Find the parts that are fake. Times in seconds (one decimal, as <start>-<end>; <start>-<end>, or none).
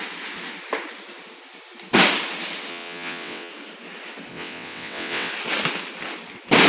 2.7-3.5; 4.3-5.3